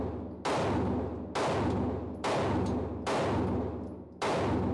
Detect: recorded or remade recorded